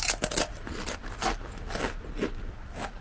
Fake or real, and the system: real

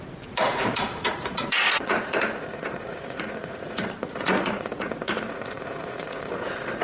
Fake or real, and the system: fake, vocoder, Vocos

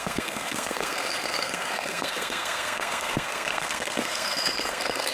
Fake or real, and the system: fake, codec, SNAC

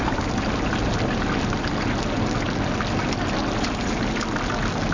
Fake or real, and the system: real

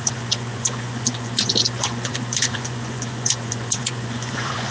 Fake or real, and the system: fake, vocoder, Vocos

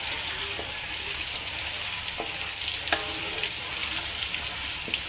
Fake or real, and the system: real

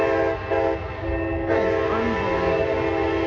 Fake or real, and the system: real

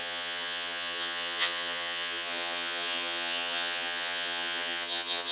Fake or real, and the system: fake, vocoder, HiFi-GAN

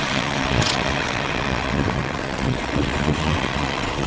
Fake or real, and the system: fake, vocoder, WaveNeXt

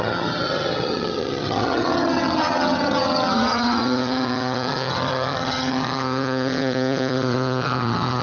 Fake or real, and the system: fake, vocoder, HiFi-GAN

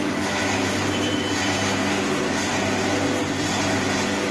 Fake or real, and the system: real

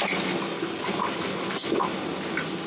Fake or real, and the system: real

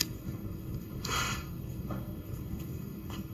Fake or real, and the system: fake, codec, SNAC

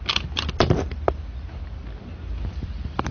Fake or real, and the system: fake, vocoder, BigVGAN v2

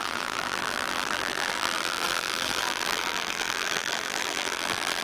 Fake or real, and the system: fake, vocoder, BigVGAN v2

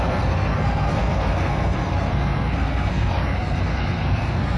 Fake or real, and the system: fake, codec, SNAC